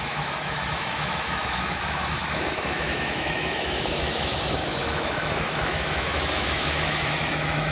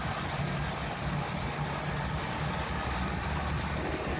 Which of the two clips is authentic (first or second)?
second